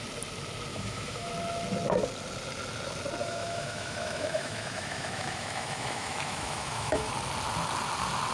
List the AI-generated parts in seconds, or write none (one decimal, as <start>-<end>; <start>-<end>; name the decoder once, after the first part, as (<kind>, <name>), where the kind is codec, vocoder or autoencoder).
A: 0.7-1.3 (autoencoder, DAC-VAE); 3.2-7.1